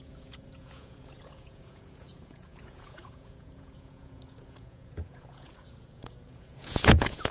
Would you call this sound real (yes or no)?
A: no